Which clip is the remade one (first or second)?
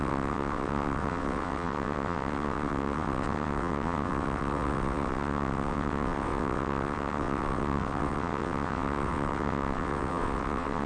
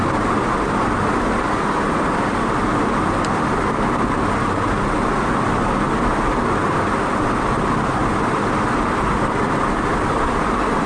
first